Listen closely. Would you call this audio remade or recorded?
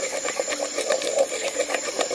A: recorded